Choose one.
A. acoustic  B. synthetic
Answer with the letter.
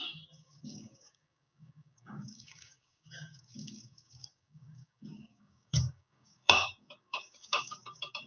B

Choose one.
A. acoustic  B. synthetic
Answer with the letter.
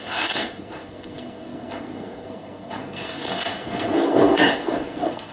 B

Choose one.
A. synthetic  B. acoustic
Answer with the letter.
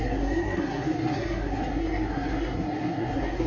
A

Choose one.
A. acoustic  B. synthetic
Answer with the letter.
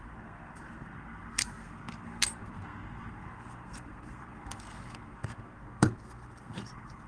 B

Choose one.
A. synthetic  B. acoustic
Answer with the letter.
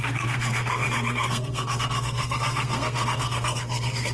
A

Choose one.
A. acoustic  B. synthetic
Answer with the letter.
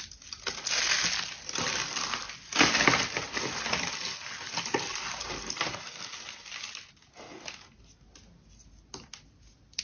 A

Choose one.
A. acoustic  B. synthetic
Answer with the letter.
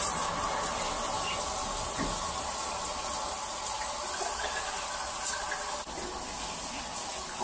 A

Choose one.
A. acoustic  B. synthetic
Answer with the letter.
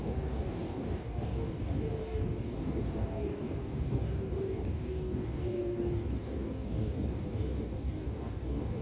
B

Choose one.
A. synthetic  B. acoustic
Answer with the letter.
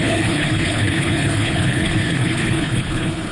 A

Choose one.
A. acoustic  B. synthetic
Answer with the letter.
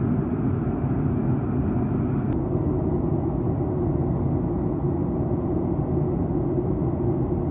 A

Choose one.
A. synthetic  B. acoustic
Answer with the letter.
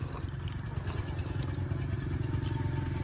B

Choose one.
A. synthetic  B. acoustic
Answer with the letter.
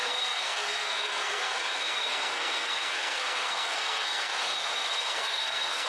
A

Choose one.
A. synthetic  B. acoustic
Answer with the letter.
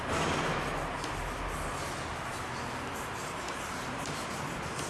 B